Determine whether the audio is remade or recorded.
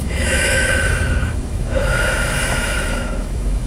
remade